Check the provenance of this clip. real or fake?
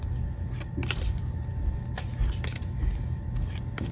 real